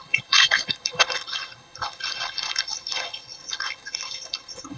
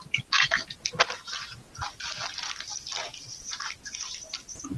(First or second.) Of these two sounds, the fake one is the first